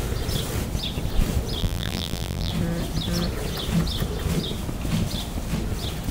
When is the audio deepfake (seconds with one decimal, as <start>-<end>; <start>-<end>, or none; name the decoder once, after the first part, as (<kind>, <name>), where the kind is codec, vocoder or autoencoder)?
1.6-2.5 (vocoder, BigVGAN v2)